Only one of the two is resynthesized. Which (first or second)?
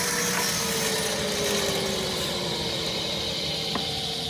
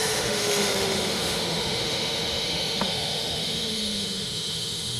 second